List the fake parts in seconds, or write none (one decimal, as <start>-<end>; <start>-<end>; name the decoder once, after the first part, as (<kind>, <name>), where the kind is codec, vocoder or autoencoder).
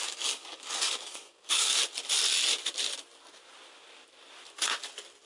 0.0-1.7 (codec, DAC)